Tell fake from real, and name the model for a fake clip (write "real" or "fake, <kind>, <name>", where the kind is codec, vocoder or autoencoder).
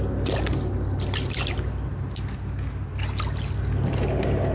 real